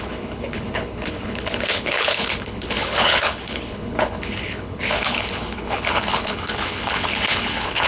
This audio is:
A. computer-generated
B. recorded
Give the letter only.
A